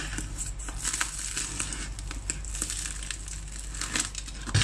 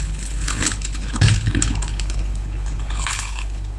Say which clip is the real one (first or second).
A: first